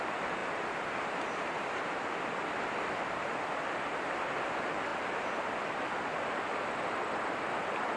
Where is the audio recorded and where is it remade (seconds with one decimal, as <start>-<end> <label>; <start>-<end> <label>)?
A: 0.0-0.4 recorded; 0.4-4.1 remade; 4.1-8.0 recorded